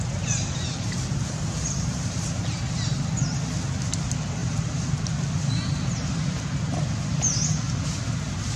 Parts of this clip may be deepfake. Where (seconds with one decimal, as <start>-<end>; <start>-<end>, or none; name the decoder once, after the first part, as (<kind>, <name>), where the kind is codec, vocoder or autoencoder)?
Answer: 0.4-2.4 (vocoder, BigVGAN v2); 4.4-5.0